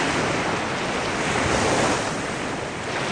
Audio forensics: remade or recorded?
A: recorded